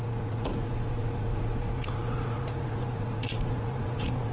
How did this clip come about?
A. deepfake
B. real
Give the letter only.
A